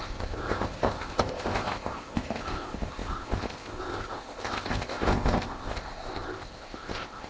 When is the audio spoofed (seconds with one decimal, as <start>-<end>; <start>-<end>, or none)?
0.0-7.3